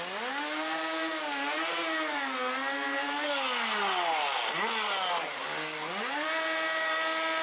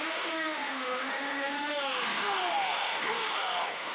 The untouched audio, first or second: first